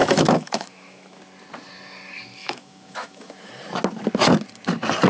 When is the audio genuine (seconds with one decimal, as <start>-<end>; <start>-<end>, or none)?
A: 1.2-2.4; 3.5-5.1